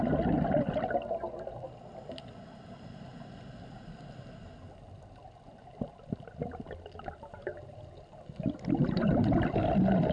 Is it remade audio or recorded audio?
recorded